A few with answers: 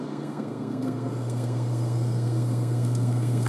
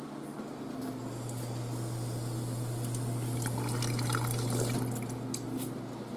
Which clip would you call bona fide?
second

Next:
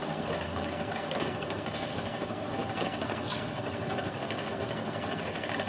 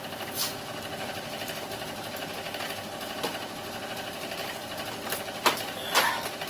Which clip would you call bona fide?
second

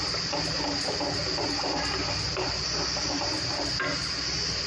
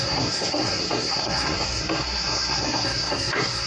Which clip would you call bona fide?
first